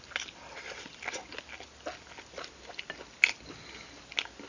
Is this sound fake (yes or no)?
no